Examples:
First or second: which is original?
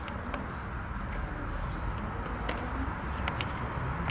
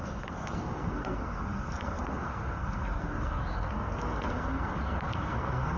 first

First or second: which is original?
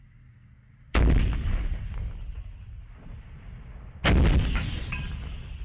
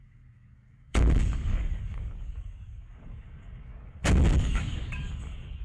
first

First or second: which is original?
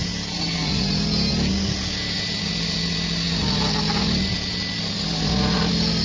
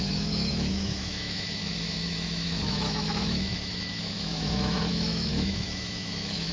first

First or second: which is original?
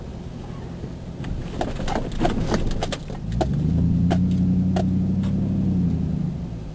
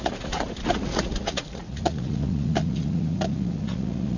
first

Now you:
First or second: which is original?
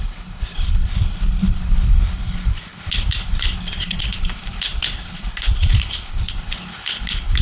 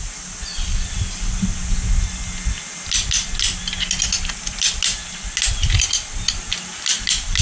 second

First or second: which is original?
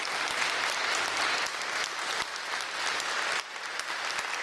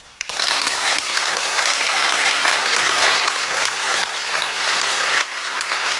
first